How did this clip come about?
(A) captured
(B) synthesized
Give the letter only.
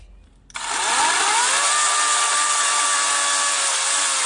A